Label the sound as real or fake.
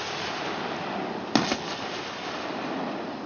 real